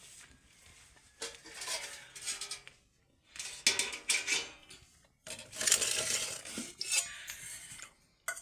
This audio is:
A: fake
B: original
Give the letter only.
B